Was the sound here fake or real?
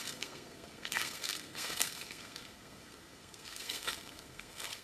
fake